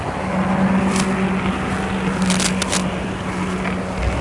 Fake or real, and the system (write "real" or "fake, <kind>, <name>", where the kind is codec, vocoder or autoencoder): real